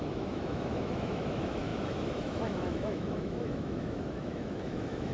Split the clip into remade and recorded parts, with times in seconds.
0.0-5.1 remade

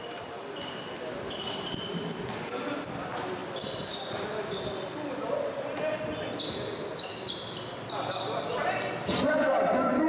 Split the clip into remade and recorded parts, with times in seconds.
0.0-10.1 recorded

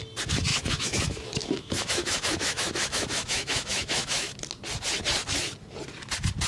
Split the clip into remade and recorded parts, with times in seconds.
0.0-0.5 recorded; 0.5-4.4 remade; 4.4-6.5 recorded